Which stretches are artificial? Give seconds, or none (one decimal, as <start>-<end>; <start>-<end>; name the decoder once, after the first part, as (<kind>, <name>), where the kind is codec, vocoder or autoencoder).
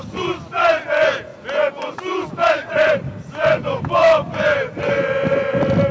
0.0-1.3 (vocoder, BigVGAN v2); 2.3-5.9